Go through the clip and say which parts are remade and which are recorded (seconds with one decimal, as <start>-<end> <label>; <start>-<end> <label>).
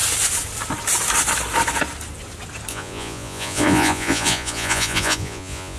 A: 0.0-2.7 recorded; 2.7-5.8 remade